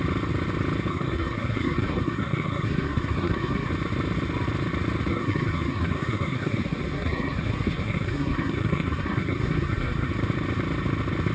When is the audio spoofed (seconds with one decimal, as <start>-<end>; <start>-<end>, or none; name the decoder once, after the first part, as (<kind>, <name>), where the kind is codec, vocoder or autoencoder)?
0.9-3.7 (codec, SNAC); 5.1-10.1